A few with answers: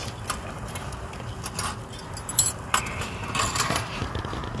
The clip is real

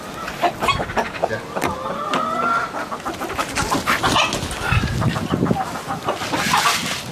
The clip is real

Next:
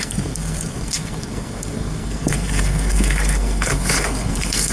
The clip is fake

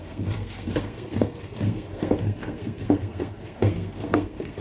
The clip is fake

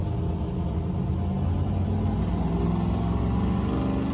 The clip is real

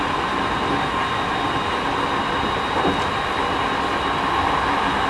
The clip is real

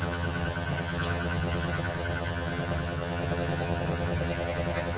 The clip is fake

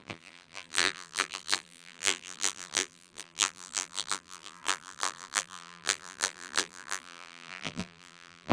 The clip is fake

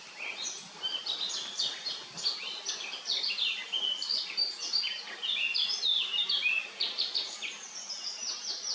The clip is real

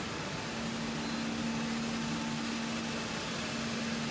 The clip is real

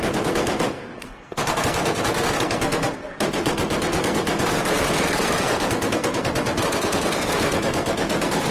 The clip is fake